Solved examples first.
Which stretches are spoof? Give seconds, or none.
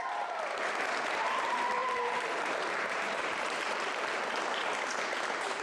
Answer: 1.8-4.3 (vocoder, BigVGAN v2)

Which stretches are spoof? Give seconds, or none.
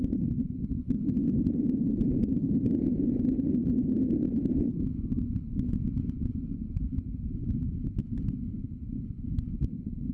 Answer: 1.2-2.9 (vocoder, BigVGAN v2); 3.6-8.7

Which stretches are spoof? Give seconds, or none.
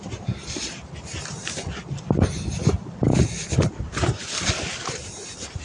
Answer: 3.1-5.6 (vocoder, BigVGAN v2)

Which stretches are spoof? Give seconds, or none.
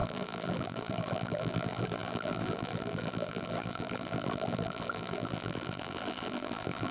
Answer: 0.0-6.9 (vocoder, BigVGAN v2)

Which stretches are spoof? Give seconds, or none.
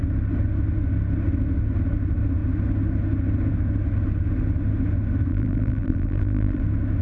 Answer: 5.3-6.6 (vocoder, BigVGAN v2)